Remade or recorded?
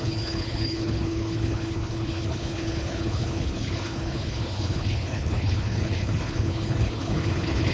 remade